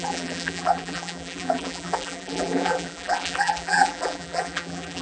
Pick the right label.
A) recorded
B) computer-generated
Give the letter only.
B